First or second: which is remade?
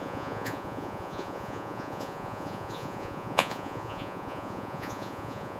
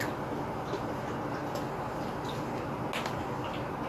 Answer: first